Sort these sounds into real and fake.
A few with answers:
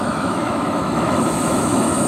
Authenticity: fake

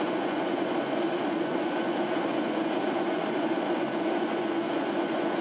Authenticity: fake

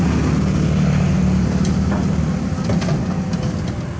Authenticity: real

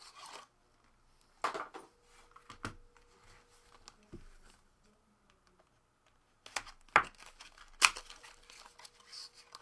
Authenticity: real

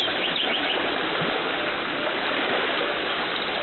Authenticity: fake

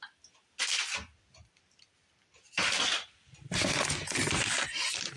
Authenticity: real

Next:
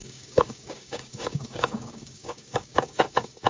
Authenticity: fake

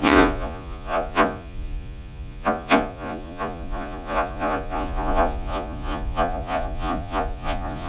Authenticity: fake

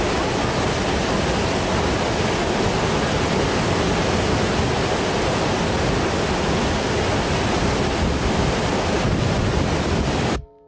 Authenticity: real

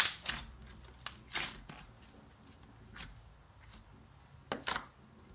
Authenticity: real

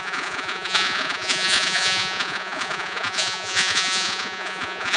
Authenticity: fake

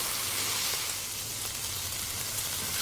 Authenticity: real